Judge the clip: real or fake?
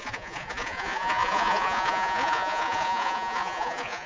fake